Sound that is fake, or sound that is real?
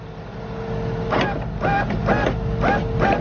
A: real